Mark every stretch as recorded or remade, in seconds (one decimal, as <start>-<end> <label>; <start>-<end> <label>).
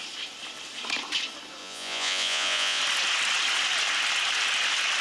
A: 0.0-1.6 recorded; 1.6-2.8 remade; 2.8-5.0 recorded